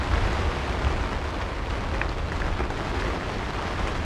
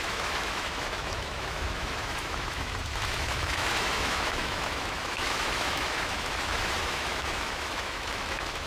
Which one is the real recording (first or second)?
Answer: first